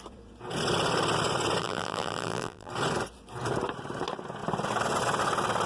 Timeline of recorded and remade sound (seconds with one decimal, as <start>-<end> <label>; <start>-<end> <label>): 0.0-1.6 recorded; 1.6-2.7 remade; 2.7-5.7 recorded